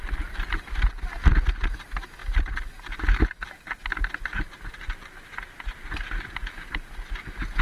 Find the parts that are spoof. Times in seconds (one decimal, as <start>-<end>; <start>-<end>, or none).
none

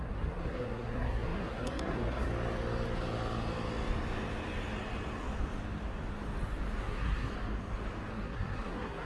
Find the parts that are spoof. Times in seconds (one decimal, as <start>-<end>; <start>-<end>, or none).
0.0-2.3; 6.8-7.3; 8.1-9.1

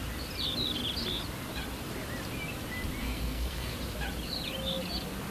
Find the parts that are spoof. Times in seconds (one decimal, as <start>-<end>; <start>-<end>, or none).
3.0-3.7

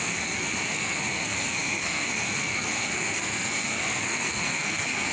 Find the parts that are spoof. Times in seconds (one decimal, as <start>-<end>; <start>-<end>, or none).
0.0-5.1

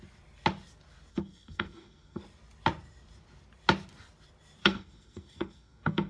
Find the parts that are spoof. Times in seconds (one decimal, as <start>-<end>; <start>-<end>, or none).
1.1-2.2; 4.6-6.1